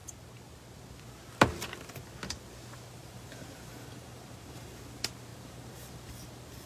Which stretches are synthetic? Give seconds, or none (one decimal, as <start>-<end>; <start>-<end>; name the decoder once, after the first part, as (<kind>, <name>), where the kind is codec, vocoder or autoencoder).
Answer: 3.0-4.8 (vocoder, BigVGAN v2); 5.3-6.1